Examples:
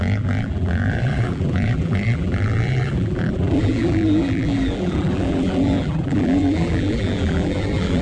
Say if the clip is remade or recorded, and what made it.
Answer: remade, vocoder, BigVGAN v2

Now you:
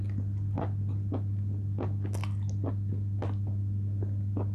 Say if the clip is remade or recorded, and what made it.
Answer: recorded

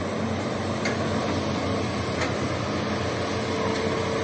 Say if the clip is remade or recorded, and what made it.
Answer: recorded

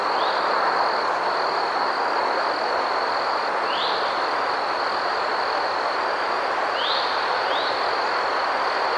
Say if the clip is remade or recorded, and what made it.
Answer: recorded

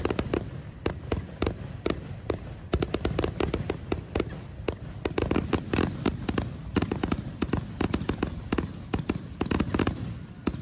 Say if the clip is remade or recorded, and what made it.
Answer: recorded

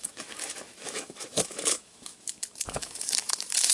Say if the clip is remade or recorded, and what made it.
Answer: remade, autoencoder, DAC-VAE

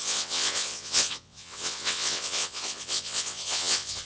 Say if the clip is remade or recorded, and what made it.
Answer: remade, vocoder, WaveNeXt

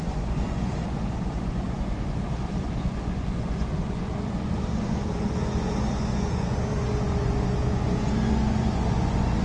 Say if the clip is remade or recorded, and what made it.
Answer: remade, vocoder, Vocos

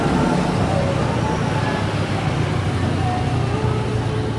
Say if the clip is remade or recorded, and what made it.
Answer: recorded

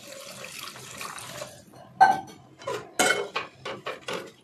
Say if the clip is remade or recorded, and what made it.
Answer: recorded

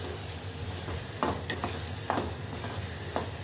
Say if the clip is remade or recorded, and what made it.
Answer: recorded